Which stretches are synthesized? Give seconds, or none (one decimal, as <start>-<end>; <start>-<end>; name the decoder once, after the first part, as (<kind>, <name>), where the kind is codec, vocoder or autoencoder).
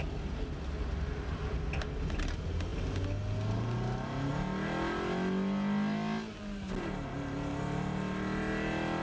none